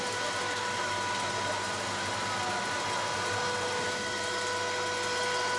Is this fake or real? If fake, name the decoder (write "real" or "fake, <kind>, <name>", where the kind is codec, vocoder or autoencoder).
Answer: real